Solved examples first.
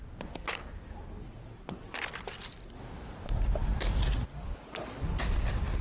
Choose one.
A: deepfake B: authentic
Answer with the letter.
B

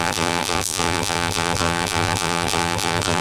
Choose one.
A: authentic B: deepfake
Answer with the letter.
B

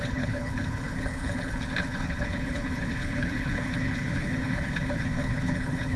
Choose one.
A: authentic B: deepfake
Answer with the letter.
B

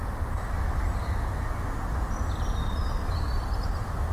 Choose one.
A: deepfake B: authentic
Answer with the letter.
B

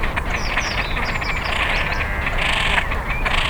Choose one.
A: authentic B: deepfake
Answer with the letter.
A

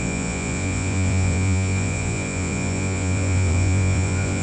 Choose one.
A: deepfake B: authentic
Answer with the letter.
A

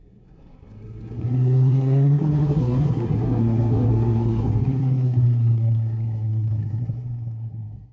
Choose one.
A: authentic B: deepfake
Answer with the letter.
B